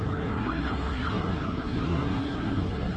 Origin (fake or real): fake